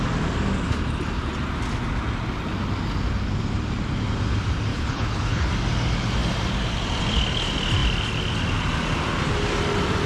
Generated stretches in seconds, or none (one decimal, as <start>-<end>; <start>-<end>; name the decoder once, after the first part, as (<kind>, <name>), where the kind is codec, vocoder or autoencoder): 4.7-5.5 (codec, HILCodec)

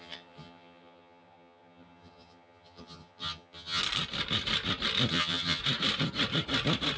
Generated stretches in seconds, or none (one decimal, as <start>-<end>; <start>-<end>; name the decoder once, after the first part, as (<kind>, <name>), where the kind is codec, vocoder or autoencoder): 0.0-3.8 (vocoder, HiFi-GAN); 5.1-5.6

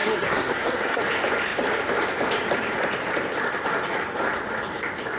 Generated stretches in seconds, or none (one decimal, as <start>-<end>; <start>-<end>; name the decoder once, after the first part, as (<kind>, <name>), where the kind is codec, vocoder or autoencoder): 0.0-1.0 (codec, SNAC)

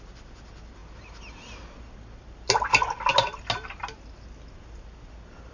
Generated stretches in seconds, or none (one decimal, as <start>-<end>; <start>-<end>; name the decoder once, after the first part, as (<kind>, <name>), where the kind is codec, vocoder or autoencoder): none

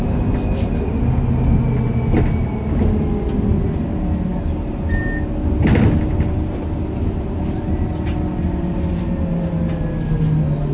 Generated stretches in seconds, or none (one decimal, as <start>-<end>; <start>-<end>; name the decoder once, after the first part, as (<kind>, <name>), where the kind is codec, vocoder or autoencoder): none

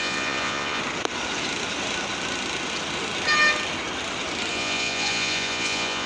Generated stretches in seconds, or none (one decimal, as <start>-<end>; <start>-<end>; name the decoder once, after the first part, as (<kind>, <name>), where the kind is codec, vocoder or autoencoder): 0.0-0.8 (vocoder, Vocos); 4.5-6.1